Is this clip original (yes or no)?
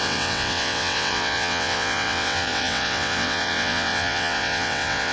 no